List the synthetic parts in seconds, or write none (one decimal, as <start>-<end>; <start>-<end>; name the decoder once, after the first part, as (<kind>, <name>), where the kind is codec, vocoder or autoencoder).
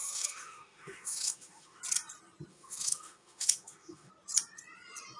0.0-1.8 (autoencoder, DAC-VAE); 2.5-4.1